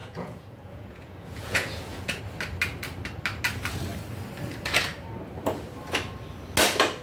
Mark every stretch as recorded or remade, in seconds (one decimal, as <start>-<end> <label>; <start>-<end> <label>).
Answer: 0.0-2.2 remade; 2.2-7.0 recorded